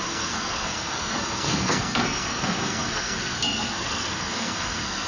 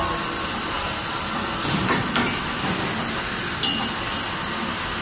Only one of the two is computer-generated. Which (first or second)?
first